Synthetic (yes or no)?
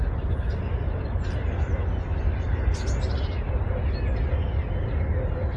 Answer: no